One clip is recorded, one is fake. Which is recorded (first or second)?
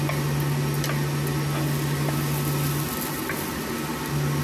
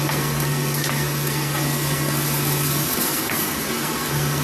first